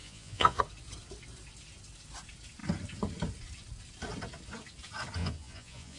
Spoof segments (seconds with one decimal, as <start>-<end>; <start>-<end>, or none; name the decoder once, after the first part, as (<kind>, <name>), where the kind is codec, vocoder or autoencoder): 0.0-0.6 (vocoder, Vocos); 5.2-6.0